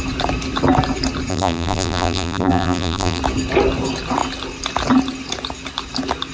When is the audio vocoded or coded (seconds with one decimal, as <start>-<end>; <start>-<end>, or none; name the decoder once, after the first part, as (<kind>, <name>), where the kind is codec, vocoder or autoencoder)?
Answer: 1.3-3.2 (vocoder, BigVGAN v2)